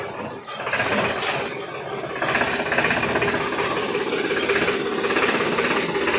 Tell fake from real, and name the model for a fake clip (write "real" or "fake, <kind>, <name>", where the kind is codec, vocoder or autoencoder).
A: real